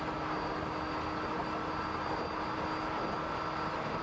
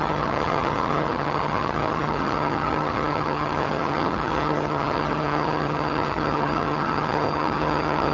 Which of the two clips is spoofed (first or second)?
second